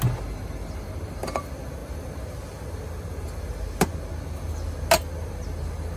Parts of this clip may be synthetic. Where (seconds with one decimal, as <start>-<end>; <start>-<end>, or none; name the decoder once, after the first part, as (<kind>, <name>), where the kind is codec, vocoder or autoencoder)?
none